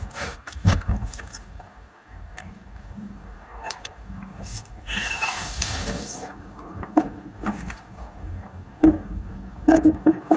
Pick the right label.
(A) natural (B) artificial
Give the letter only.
B